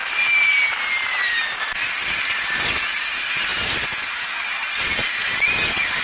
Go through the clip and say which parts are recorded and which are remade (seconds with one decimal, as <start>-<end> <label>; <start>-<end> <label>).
0.0-2.7 remade; 2.7-6.0 recorded